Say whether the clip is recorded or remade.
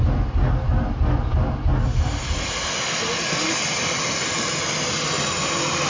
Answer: recorded